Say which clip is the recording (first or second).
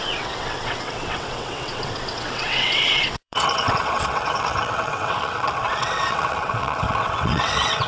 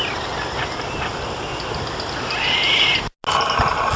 second